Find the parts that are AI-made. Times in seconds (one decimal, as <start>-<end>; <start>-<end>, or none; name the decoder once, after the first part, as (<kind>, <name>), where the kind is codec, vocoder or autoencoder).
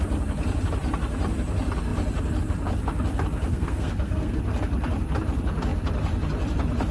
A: 3.5-4.4 (codec, SNAC)